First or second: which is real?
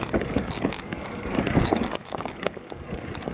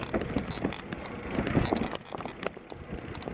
second